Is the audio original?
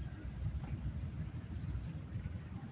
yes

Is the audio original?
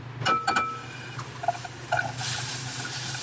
yes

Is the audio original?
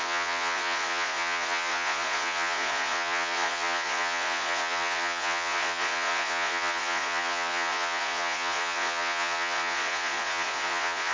no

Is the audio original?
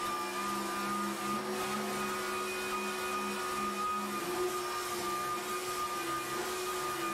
yes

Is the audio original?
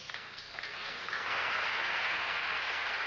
no